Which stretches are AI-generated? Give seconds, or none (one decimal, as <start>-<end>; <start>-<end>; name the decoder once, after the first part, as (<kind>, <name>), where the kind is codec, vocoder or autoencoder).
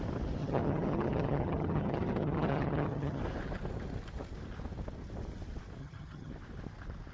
0.4-3.2 (vocoder, HiFi-GAN); 5.8-6.3